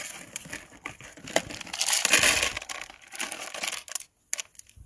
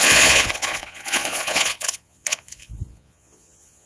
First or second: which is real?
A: first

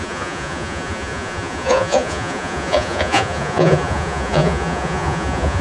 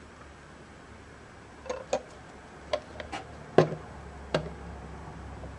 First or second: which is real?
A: second